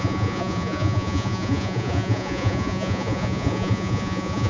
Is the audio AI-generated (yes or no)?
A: yes